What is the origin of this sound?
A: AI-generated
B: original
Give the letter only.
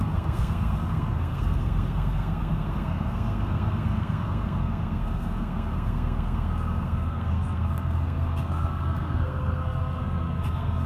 A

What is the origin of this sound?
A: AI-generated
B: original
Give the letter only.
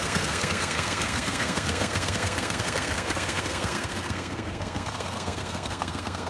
A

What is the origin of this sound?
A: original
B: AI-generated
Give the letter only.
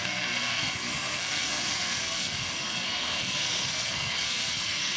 B